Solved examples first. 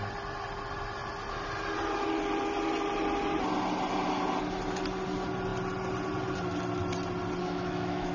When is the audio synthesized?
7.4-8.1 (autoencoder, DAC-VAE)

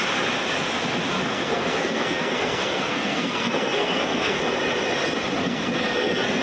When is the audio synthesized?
1.2-4.4 (codec, SNAC); 5.4-6.4

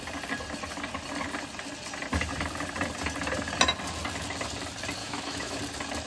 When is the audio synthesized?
5.0-5.6 (autoencoder, DAC-VAE)

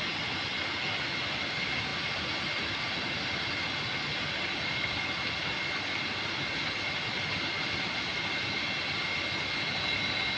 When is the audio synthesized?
none

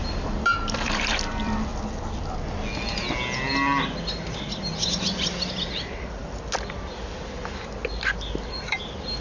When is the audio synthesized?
0.0-1.7 (vocoder, BigVGAN v2); 5.5-6.2; 8.5-9.2

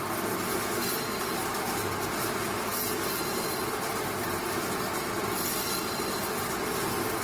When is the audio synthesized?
none

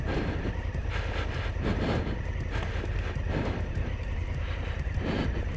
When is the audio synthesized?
none